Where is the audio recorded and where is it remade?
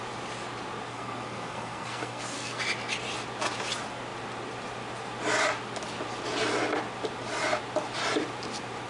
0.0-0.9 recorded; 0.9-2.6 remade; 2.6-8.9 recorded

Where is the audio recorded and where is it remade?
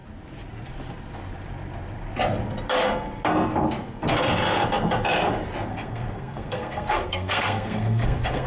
0.0-5.7 recorded; 5.7-8.5 remade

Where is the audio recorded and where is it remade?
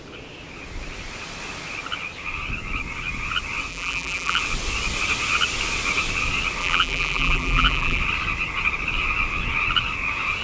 0.0-3.7 recorded; 3.7-4.4 remade; 4.4-6.6 recorded; 6.6-8.0 remade; 8.0-10.4 recorded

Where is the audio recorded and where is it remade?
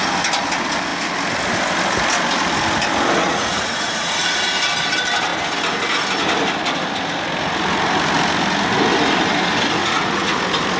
0.0-3.2 recorded; 3.2-4.4 remade; 4.4-9.8 recorded; 9.8-10.4 remade; 10.4-10.8 recorded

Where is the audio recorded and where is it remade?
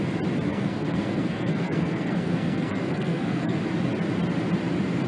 0.0-0.5 recorded; 0.5-3.6 remade; 3.6-5.1 recorded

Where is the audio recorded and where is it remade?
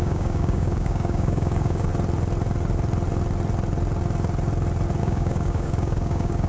0.0-1.9 remade; 1.9-5.0 recorded; 5.0-6.5 remade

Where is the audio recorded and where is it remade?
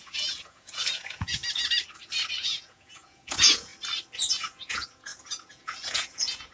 0.0-1.4 remade; 1.4-2.4 recorded; 2.4-3.7 remade; 3.7-4.3 recorded; 4.3-6.5 remade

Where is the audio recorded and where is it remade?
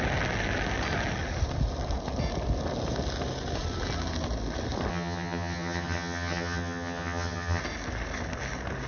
0.0-4.9 recorded; 4.9-7.6 remade; 7.6-8.9 recorded